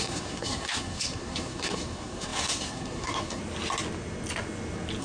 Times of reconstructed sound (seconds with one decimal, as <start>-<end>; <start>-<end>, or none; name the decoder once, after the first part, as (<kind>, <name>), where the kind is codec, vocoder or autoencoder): 0.0-3.4 (codec, SNAC)